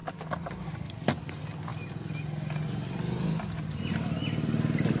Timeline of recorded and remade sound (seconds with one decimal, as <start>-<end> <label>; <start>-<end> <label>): 0.0-5.0 recorded